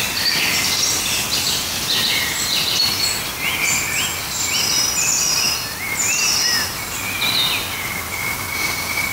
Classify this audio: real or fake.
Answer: real